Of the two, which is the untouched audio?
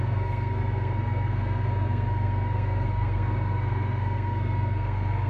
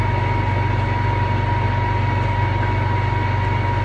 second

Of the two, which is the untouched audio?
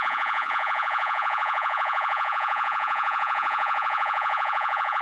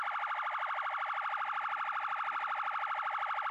second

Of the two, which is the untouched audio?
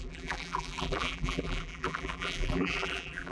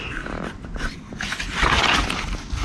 second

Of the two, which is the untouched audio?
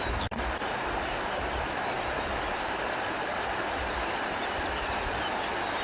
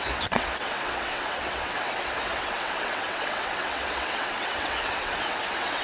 first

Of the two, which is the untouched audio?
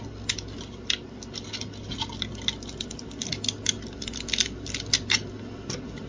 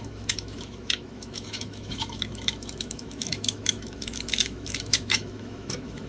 first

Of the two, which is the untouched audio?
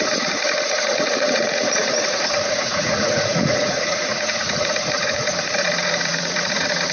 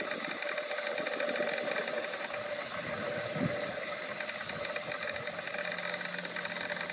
second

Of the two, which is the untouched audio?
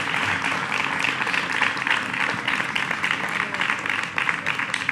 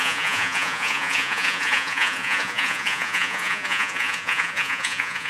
first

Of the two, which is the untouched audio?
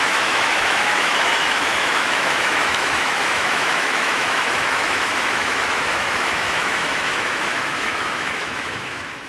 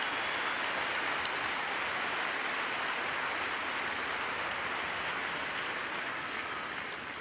second